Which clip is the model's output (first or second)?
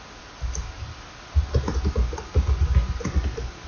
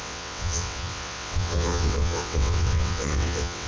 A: second